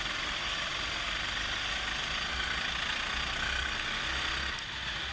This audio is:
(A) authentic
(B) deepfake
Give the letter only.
A